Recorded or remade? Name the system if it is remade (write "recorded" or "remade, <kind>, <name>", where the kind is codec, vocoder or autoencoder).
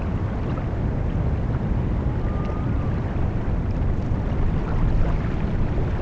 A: recorded